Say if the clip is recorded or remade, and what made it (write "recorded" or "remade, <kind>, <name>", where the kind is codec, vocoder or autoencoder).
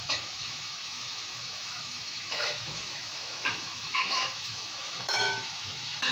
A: remade, autoencoder, DAC-VAE